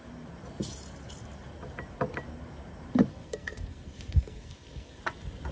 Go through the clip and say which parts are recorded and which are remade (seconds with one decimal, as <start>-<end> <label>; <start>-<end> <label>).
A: 0.0-3.1 recorded; 3.1-5.0 remade; 5.0-5.5 recorded